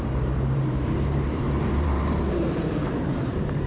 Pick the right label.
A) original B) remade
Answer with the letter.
B